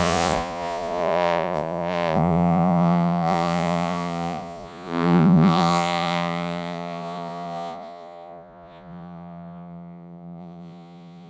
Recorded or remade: remade